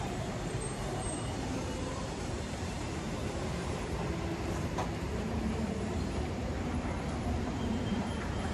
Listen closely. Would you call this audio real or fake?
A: fake